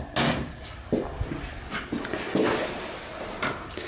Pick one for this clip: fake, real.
real